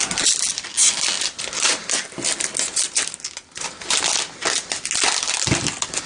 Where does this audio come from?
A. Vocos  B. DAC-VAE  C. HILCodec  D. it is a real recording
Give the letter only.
D